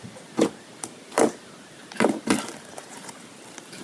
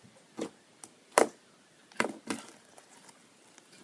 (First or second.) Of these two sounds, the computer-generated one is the first